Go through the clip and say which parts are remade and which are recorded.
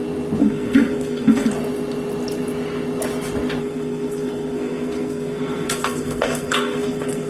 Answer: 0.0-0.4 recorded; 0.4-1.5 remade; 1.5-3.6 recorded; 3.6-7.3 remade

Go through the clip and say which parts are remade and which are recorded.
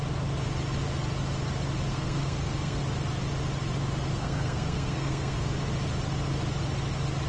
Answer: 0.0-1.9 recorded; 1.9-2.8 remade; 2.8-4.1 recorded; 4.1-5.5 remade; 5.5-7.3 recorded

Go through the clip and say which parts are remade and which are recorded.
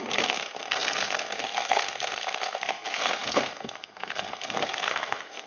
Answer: 0.0-5.5 remade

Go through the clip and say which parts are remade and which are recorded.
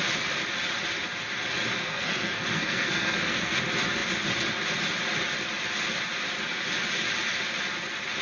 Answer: 0.0-1.8 recorded; 1.8-3.6 remade; 3.6-8.2 recorded